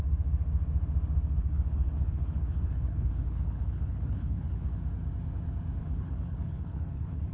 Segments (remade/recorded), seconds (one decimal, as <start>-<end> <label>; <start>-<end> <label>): 0.0-1.4 recorded; 1.4-4.7 remade; 4.7-5.8 recorded; 5.8-7.3 remade